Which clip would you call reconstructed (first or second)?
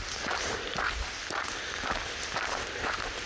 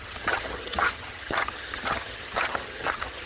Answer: second